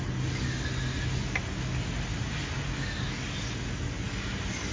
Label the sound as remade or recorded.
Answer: recorded